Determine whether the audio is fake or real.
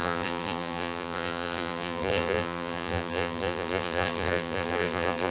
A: fake